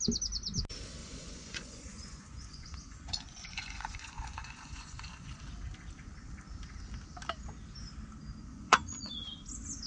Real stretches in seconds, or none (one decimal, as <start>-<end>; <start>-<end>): 0.0-1.0; 5.4-8.4; 9.1-9.9